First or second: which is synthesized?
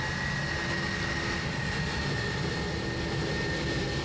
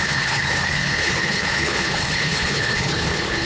second